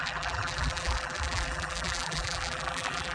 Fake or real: fake